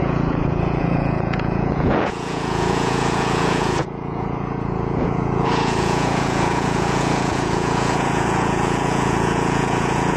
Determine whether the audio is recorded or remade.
remade